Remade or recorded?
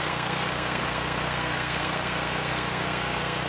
remade